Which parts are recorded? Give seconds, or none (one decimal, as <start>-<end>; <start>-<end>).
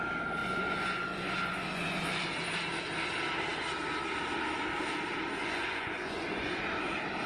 0.0-0.4; 2.4-5.4; 6.5-7.3